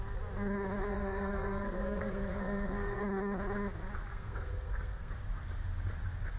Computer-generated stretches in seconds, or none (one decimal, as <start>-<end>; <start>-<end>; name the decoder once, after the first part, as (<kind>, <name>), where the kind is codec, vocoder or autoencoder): 0.9-3.0 (codec, SNAC); 4.1-5.1